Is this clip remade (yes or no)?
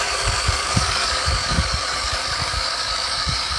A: yes